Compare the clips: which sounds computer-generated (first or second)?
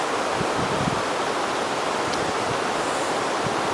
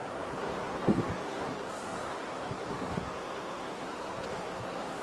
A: second